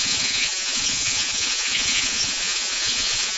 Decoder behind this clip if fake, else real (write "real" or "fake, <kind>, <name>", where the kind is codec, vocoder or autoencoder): fake, vocoder, Vocos